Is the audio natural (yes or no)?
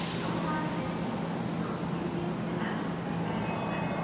yes